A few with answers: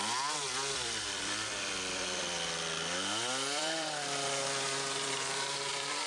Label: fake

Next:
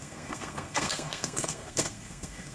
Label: fake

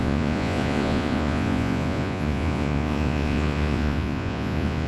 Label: fake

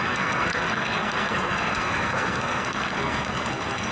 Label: fake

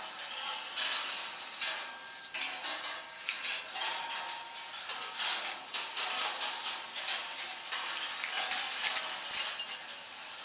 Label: real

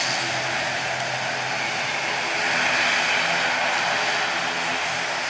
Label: real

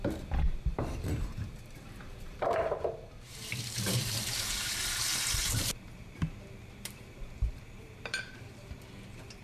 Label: fake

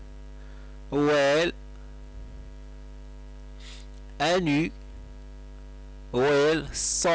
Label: real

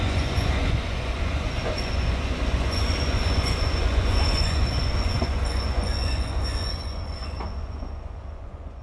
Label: fake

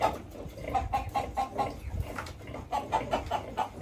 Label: real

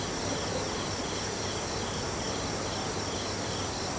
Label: real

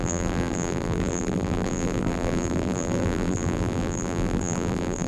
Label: fake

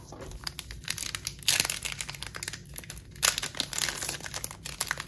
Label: real